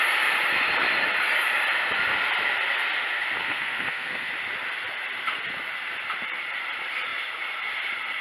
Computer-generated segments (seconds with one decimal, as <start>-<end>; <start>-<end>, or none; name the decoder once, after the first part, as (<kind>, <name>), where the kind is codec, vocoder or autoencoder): 3.4-4.3 (codec, SNAC)